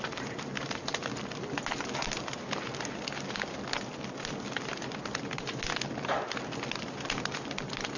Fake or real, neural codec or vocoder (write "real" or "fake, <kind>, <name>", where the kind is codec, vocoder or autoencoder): real